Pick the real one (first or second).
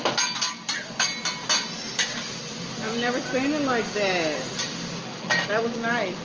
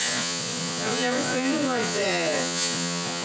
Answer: first